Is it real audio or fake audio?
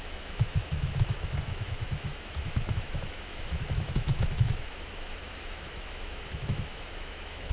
fake